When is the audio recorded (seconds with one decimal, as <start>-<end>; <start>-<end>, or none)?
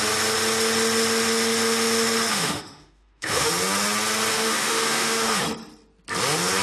0.0-2.3; 3.5-4.3; 5.4-6.6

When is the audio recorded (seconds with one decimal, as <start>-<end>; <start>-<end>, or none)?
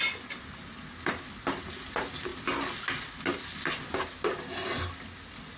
0.0-5.6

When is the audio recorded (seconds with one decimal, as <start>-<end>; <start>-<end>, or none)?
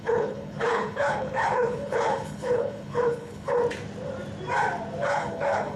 3.6-5.0